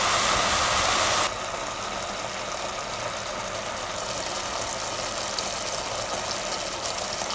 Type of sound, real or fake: real